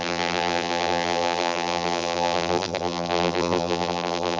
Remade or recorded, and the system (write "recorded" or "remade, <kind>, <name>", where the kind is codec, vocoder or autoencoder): remade, vocoder, BigVGAN v2